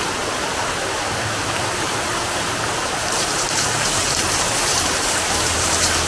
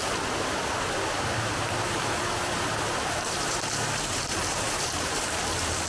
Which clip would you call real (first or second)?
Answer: second